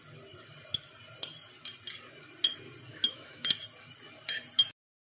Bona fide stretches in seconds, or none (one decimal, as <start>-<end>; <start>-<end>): 0.0-2.9; 3.5-5.1